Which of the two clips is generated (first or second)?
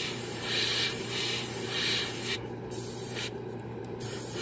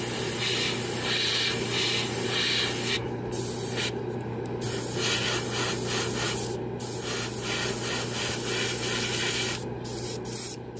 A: first